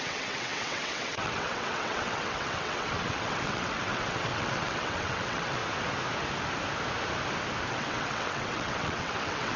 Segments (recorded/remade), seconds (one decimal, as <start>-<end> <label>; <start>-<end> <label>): 0.0-5.6 remade; 5.6-7.7 recorded; 7.7-9.6 remade